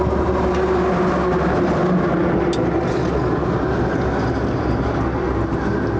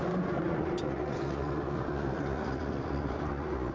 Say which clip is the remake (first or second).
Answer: second